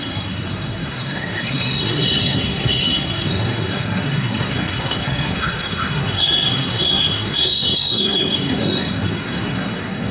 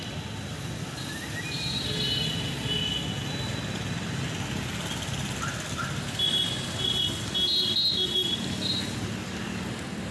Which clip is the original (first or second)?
second